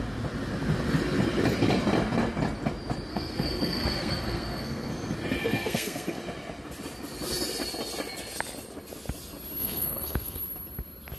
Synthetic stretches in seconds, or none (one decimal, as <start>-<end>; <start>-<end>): 3.1-4.9; 5.4-6.2; 9.6-10.4